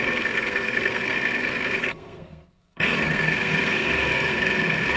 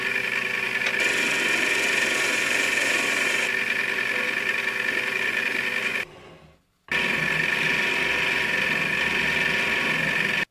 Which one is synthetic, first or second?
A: first